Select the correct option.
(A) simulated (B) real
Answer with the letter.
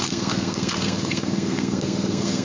A